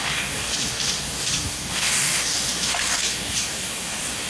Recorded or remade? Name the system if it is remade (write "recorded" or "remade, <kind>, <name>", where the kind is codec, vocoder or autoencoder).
remade, codec, DAC